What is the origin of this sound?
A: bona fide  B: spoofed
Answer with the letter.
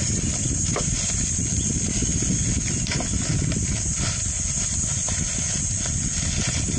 A